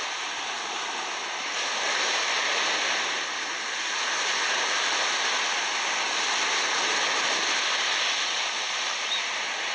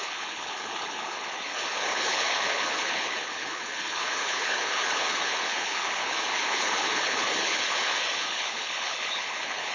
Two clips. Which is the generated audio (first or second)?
second